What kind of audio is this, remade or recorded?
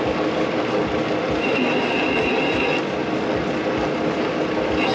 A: recorded